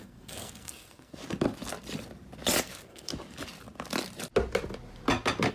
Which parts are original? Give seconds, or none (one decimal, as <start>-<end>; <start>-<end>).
1.2-2.6; 3.1-5.5